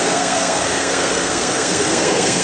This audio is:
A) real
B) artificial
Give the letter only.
B